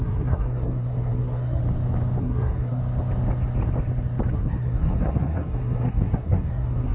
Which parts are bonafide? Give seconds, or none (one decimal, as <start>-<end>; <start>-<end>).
1.6-2.2; 2.8-4.3